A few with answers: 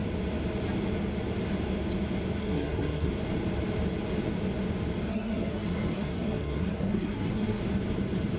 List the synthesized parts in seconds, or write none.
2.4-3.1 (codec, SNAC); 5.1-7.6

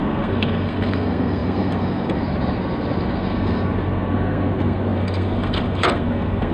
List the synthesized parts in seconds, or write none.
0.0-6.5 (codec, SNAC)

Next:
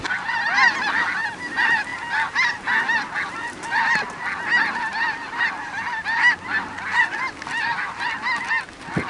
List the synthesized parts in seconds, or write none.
none